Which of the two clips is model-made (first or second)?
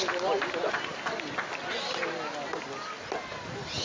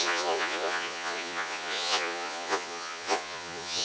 second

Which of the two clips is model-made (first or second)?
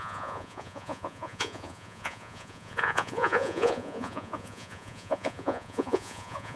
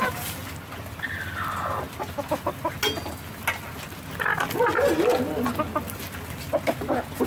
first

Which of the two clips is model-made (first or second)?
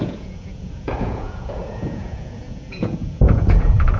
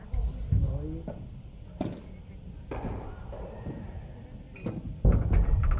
first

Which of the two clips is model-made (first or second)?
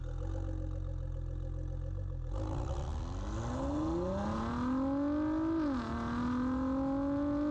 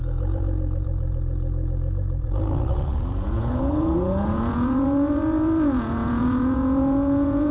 second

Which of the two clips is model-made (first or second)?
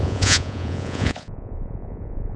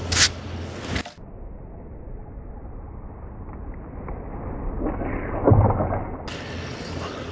first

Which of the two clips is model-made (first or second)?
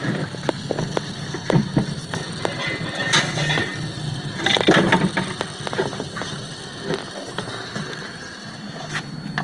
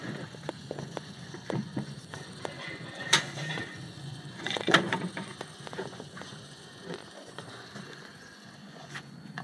second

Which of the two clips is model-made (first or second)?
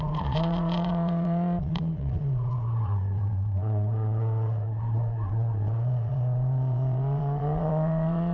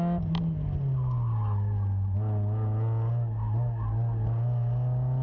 first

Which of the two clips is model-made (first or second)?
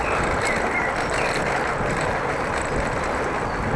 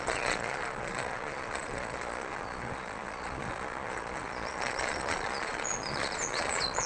second